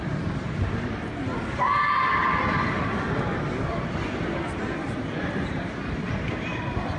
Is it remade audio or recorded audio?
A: recorded